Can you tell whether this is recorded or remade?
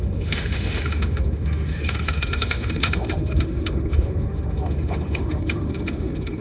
remade